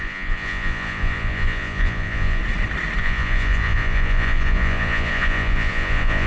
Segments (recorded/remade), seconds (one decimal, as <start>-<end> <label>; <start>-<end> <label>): 0.0-2.4 remade; 2.4-3.0 recorded; 3.0-6.3 remade

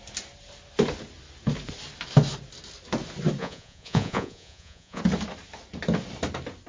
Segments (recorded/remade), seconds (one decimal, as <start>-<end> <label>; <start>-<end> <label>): 0.0-3.4 recorded; 3.4-5.0 remade; 5.0-6.7 recorded

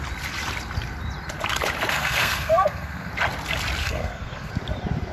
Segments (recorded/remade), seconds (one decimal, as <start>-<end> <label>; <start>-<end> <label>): 0.0-1.9 recorded; 1.9-3.1 remade; 3.1-3.8 recorded; 3.8-4.5 remade; 4.5-5.1 recorded